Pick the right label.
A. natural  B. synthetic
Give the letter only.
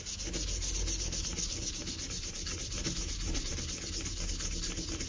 A